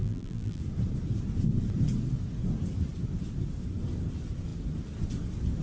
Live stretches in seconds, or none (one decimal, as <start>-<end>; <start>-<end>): 0.6-5.6